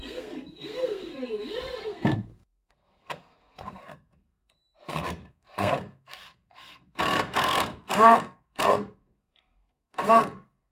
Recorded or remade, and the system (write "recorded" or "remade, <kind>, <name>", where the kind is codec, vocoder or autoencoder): remade, codec, SNAC